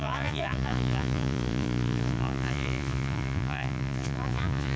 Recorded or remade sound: remade